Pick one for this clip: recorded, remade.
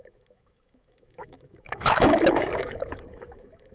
remade